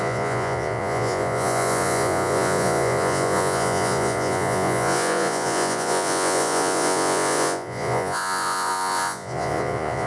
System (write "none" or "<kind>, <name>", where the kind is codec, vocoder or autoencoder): vocoder, Vocos